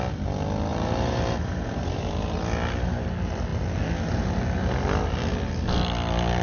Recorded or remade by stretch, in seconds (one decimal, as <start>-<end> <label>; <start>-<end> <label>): 0.0-0.7 recorded; 0.7-2.1 remade; 2.1-6.4 recorded